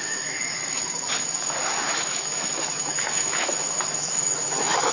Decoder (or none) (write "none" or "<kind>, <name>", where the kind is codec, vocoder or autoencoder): autoencoder, DAC-VAE